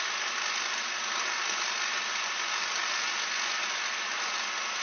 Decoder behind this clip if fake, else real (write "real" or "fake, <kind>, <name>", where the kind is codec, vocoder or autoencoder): real